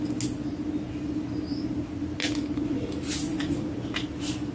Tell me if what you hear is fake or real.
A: real